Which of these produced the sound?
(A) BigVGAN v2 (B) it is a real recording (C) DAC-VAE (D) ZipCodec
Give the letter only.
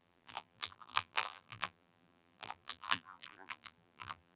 A